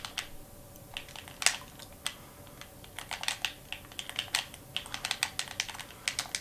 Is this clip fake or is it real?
real